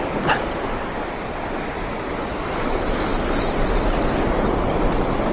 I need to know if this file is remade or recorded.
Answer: recorded